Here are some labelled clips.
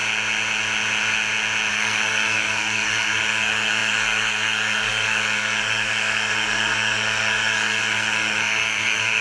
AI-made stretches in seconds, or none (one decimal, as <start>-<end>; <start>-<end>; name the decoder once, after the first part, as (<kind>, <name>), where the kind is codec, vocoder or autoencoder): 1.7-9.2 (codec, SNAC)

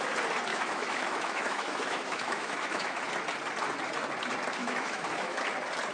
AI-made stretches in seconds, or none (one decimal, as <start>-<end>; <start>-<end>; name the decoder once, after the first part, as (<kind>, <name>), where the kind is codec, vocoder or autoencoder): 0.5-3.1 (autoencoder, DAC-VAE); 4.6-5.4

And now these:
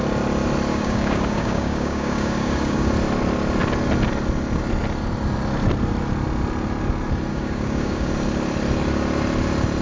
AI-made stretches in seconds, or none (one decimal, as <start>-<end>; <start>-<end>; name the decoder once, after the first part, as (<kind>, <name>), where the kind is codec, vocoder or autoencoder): 0.7-2.9 (codec, DAC); 7.3-8.1